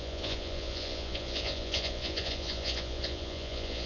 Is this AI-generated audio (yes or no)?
yes